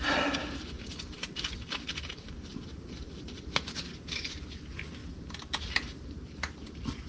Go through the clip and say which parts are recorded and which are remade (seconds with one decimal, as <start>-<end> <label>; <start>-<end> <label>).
0.0-7.1 recorded